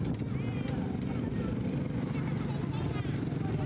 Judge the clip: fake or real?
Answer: real